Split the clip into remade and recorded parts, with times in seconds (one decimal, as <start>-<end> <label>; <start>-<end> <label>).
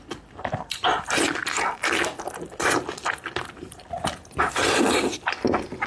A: 0.0-5.9 recorded